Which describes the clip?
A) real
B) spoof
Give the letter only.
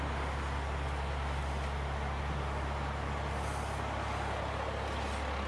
A